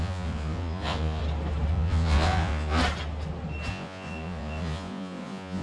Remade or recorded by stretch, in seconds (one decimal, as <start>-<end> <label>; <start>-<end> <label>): 0.0-1.2 remade; 1.2-1.7 recorded; 1.7-2.8 remade; 2.8-3.7 recorded; 3.7-5.6 remade